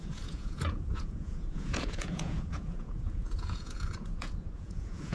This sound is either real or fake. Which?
fake